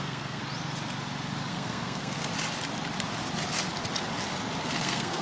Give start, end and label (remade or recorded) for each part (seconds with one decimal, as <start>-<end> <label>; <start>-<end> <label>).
0.0-0.4 remade; 0.4-1.5 recorded; 1.5-2.3 remade; 2.3-4.6 recorded; 4.6-5.2 remade